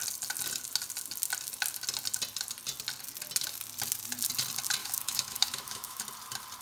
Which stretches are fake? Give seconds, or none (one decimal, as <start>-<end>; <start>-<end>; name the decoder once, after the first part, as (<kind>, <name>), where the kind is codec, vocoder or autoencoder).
4.8-6.0 (autoencoder, DAC-VAE)